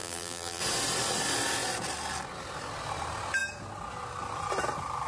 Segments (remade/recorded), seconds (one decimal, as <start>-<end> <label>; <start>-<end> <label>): 0.0-0.6 remade; 0.6-5.1 recorded

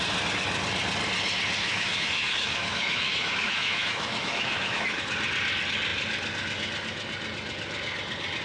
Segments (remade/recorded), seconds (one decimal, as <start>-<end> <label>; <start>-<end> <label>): 0.0-1.6 recorded; 1.6-5.0 remade; 5.0-8.4 recorded

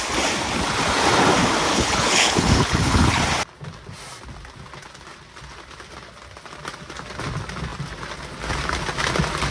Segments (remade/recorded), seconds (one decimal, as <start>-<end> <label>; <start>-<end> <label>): 0.0-1.7 recorded; 1.7-3.2 remade; 3.2-9.5 recorded

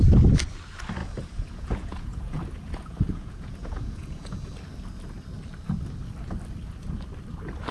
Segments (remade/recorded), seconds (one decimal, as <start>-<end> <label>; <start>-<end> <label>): 0.0-1.0 recorded; 1.0-4.5 remade; 4.5-7.7 recorded

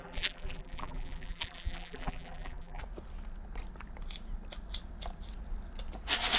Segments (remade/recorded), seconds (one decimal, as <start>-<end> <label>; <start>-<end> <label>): 0.0-2.8 remade; 2.8-6.4 recorded

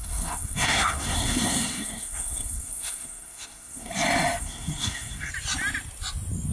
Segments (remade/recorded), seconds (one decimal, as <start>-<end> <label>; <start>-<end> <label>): 0.0-3.9 remade; 3.9-4.4 recorded; 4.4-5.3 remade; 5.3-6.5 recorded